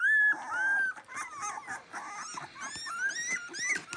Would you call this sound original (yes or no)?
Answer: yes